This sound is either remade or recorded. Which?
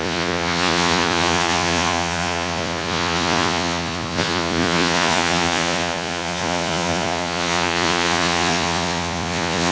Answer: remade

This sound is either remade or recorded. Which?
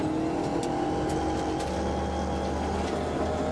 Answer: recorded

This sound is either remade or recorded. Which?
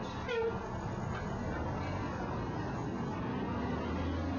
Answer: recorded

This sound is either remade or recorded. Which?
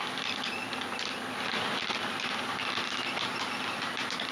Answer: recorded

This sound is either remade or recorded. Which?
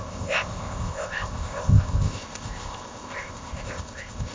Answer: remade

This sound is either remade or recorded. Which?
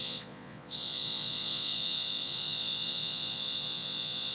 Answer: remade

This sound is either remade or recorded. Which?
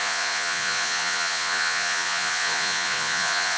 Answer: remade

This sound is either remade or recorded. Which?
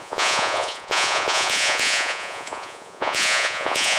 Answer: remade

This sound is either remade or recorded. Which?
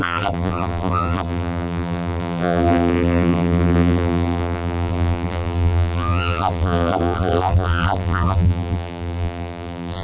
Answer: remade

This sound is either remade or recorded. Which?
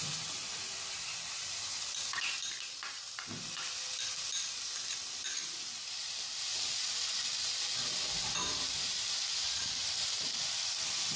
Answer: remade